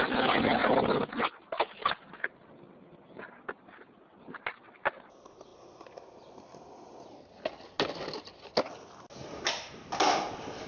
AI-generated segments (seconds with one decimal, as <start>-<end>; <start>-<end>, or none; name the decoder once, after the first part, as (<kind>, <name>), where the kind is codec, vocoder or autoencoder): none